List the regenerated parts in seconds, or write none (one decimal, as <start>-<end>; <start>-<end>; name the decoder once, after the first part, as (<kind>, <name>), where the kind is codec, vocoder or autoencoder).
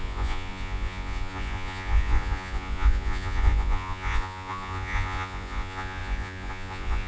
0.0-7.1 (vocoder, Vocos)